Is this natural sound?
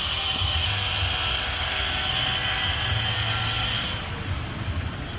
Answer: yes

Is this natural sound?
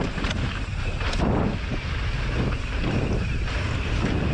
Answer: yes